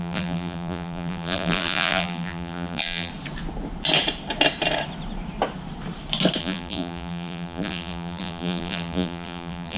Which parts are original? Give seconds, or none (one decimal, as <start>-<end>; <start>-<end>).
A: 3.1-6.4